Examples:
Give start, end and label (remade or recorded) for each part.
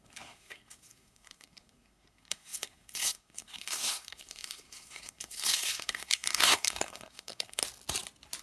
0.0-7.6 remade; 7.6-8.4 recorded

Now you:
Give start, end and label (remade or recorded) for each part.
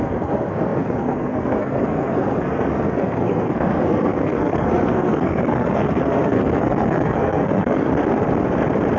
0.0-7.9 remade; 7.9-9.0 recorded